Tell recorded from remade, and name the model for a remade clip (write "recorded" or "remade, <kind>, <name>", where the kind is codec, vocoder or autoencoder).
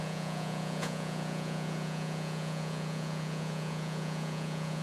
remade, vocoder, Vocos